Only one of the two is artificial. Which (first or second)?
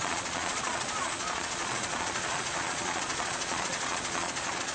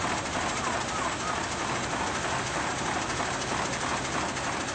first